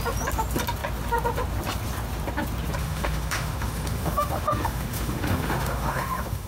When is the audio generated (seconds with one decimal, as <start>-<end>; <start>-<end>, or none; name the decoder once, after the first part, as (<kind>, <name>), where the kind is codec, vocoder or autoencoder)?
2.8-6.5 (autoencoder, DAC-VAE)